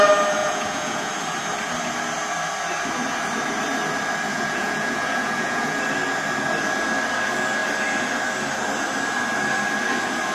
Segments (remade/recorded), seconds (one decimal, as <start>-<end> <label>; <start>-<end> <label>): 0.0-0.4 recorded; 0.4-1.1 remade; 1.1-4.3 recorded; 4.3-5.8 remade; 5.8-10.3 recorded